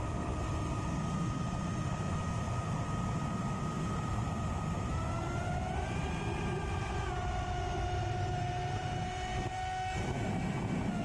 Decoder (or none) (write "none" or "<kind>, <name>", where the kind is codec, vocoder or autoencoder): vocoder, BigVGAN v2